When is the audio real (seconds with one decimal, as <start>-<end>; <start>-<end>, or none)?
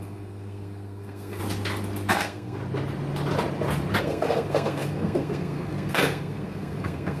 1.4-2.1; 2.6-4.0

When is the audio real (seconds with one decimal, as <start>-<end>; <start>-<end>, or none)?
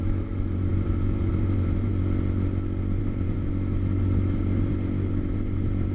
1.9-3.0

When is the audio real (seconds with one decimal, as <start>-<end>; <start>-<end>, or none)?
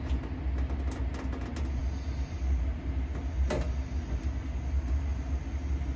0.0-6.0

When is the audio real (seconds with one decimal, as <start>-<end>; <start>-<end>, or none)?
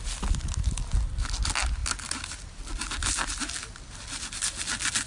0.0-5.1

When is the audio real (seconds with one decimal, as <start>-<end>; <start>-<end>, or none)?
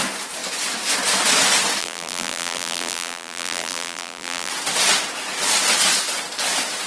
0.0-1.8; 4.5-6.9